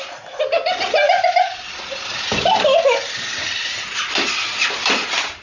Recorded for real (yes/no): yes